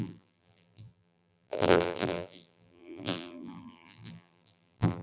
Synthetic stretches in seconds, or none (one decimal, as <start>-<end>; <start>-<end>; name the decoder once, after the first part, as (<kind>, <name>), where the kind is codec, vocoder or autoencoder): 0.0-5.0 (vocoder, BigVGAN v2)